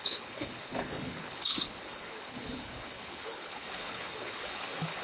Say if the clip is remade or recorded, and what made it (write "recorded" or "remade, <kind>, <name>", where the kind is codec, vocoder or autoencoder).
remade, codec, HILCodec